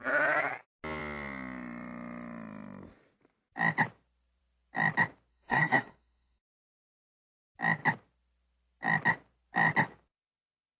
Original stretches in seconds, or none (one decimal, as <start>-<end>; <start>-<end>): 0.0-5.3; 6.6-10.8